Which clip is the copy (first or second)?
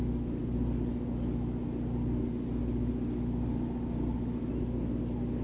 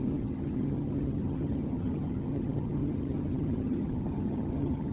second